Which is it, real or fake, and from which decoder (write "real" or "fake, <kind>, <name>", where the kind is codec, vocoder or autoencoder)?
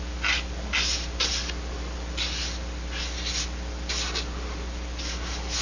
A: real